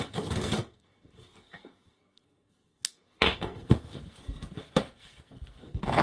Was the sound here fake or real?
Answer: fake